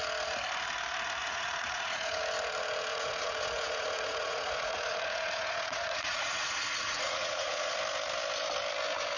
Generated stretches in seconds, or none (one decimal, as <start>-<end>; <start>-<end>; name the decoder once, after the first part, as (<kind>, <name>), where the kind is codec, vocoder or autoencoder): 1.2-2.2 (vocoder, Vocos); 2.9-7.7